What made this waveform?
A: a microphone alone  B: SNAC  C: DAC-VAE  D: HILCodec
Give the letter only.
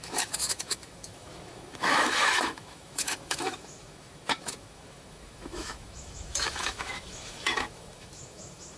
C